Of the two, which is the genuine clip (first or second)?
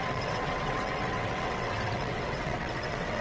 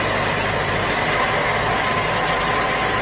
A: second